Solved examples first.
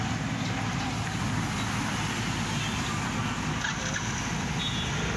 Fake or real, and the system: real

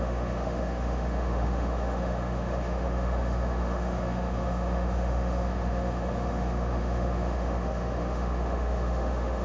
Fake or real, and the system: fake, autoencoder, DAC-VAE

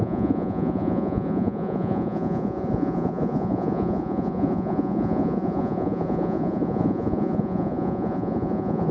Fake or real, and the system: fake, vocoder, Vocos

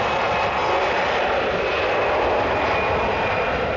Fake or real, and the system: real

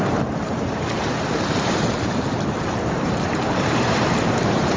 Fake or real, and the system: fake, vocoder, BigVGAN v2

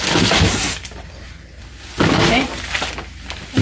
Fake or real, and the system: real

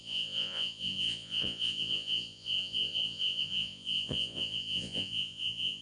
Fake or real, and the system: fake, vocoder, Vocos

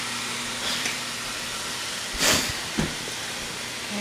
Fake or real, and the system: fake, vocoder, BigVGAN v2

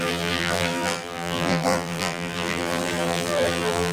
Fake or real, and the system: fake, vocoder, BigVGAN v2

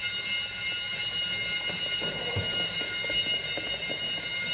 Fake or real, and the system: real